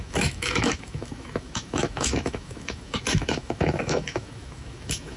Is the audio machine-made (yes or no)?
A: yes